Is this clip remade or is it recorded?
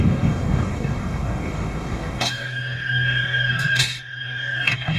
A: remade